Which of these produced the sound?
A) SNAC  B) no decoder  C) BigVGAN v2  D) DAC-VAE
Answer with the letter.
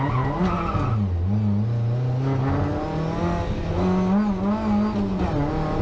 B